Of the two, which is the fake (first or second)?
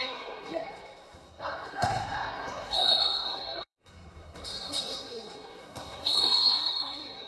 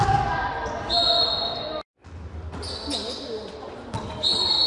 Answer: first